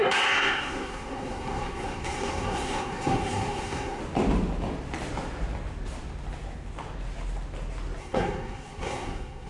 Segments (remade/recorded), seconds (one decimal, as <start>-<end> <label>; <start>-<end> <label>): 0.0-4.0 remade; 4.0-8.0 recorded; 8.0-9.5 remade